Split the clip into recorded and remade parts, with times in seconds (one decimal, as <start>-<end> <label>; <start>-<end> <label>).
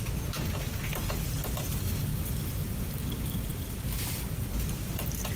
0.0-2.1 recorded; 2.1-3.1 remade; 3.1-5.4 recorded